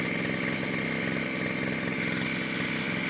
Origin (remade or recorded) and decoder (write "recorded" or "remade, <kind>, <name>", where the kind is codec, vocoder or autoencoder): recorded